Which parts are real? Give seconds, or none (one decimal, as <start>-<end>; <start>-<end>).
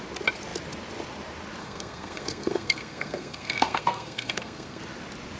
0.0-1.6; 4.8-5.4